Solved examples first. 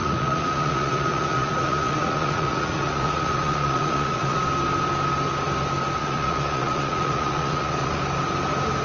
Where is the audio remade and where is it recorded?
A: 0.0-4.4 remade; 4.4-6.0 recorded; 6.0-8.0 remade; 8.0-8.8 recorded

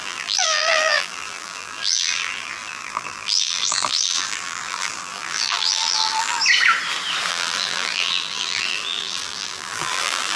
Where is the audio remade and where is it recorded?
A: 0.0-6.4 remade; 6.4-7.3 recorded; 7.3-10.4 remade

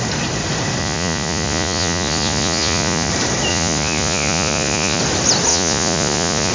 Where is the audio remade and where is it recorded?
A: 0.0-0.8 recorded; 0.8-3.1 remade; 3.1-3.5 recorded; 3.5-5.0 remade; 5.0-5.5 recorded; 5.5-6.5 remade